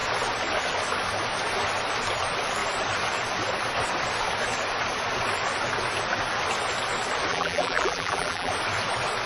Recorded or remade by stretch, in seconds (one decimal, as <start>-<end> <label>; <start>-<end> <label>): 0.0-7.3 recorded; 7.3-8.5 remade; 8.5-9.3 recorded